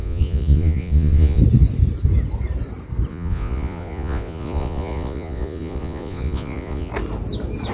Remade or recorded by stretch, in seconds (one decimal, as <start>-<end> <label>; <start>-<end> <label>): 0.0-1.4 remade; 1.4-3.1 recorded; 3.1-6.9 remade; 6.9-7.7 recorded